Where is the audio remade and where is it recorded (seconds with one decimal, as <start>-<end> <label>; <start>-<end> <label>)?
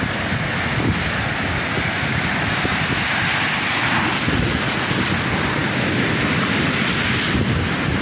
0.0-8.0 recorded